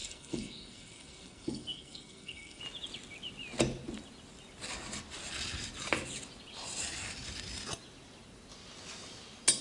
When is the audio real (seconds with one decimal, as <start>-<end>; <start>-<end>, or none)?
2.6-9.6